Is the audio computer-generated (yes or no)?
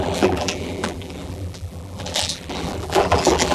yes